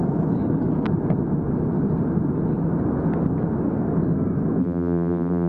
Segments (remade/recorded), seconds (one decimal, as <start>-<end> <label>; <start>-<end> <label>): 0.0-4.6 recorded; 4.6-5.5 remade

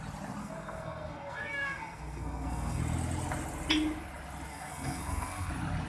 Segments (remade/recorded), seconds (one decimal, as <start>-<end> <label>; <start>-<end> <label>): 0.0-0.4 recorded; 0.4-2.8 remade; 2.8-4.5 recorded; 4.5-5.5 remade; 5.5-5.9 recorded

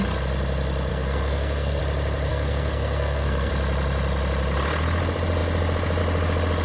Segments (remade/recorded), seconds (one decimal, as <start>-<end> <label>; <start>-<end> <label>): 0.0-0.9 recorded; 0.9-1.8 remade; 1.8-2.3 recorded; 2.3-3.5 remade; 3.5-6.6 recorded

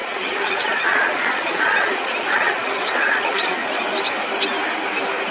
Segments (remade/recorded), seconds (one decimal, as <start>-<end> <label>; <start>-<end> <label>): 0.0-3.6 remade; 3.6-5.3 recorded

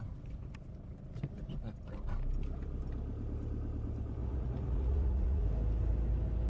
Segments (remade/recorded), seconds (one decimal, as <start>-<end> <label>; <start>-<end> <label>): 0.0-4.2 recorded; 4.2-5.4 remade; 5.4-6.5 recorded

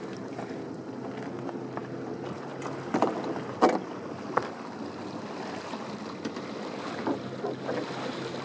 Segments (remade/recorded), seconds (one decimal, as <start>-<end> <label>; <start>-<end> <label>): 0.0-8.4 recorded

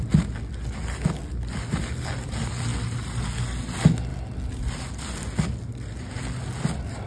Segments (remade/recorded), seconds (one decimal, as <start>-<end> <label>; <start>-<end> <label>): 0.0-7.1 recorded